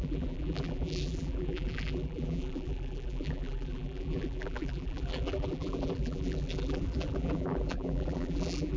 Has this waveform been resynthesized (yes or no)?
yes